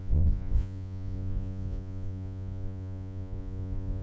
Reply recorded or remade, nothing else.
remade